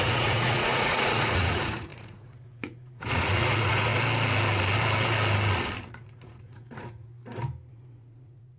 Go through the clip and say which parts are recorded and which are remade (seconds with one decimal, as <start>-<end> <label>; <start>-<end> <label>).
0.0-3.9 remade; 3.9-5.9 recorded; 5.9-7.1 remade; 7.1-7.7 recorded; 7.7-8.6 remade